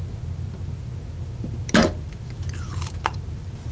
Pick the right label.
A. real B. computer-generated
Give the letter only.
A